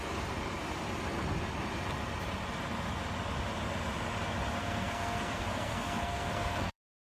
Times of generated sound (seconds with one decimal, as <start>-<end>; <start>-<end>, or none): 4.6-6.8